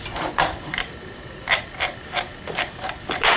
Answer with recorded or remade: remade